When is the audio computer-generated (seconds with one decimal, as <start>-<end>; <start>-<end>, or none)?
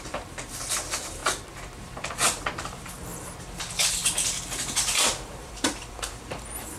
0.0-3.1; 3.6-4.0; 5.0-6.8